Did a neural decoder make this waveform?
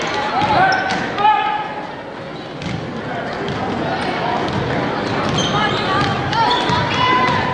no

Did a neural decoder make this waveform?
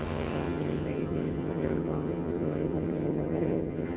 yes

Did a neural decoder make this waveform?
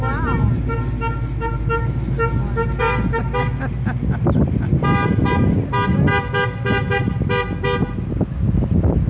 no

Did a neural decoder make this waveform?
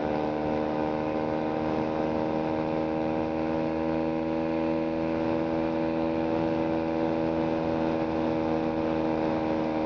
no